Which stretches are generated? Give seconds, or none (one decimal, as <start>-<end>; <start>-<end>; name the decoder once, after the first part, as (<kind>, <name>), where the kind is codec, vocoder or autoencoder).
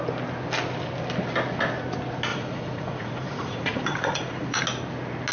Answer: 2.3-4.6 (vocoder, Vocos)